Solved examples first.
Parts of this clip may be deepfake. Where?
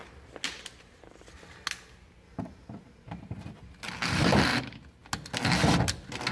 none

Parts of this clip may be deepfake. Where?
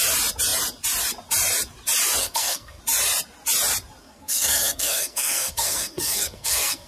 2.2-2.8 (codec, SNAC); 4.0-6.9